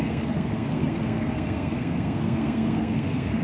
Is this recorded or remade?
remade